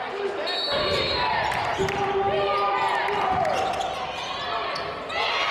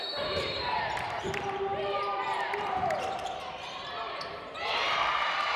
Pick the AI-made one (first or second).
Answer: second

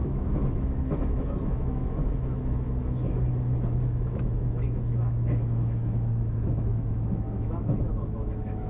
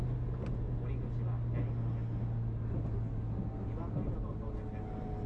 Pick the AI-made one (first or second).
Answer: first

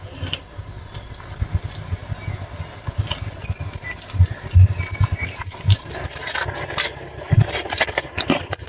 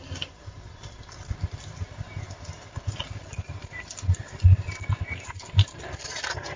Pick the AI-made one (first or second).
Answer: second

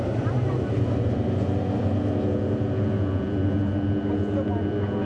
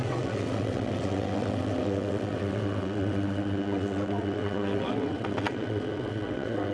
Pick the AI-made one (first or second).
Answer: second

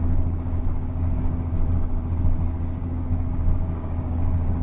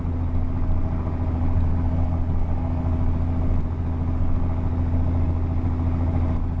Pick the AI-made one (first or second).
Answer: first